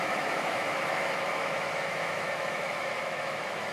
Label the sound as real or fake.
fake